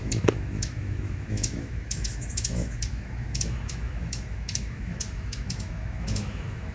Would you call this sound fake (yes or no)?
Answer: yes